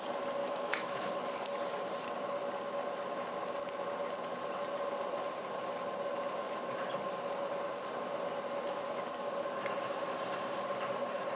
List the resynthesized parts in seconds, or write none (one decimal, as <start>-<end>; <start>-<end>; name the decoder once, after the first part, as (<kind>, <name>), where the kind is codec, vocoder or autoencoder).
0.4-1.1 (autoencoder, DAC-VAE)